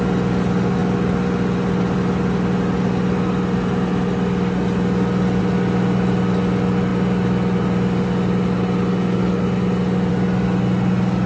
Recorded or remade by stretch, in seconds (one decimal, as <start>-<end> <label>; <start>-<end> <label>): 0.0-11.3 recorded